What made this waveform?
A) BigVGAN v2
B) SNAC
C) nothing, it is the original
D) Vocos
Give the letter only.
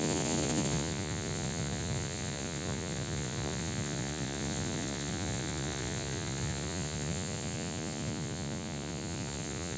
D